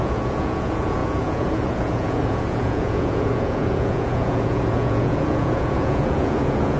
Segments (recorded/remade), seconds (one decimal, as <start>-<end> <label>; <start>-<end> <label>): 0.0-6.8 remade